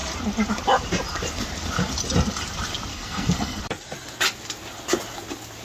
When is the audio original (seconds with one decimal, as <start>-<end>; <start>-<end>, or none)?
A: 0.0-2.9; 3.6-5.6